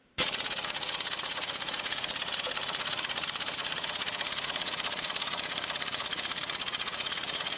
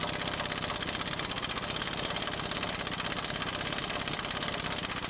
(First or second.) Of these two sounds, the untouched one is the second